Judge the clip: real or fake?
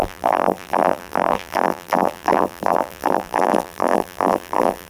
fake